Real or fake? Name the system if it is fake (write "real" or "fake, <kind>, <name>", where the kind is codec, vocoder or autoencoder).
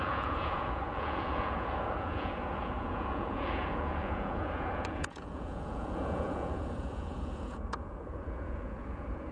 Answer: fake, vocoder, Vocos